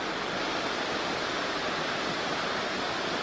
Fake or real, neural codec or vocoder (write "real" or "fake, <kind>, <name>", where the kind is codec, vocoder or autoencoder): real